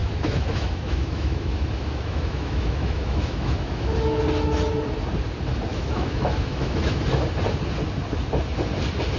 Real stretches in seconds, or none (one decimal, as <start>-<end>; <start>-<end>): 4.2-5.7; 7.0-9.2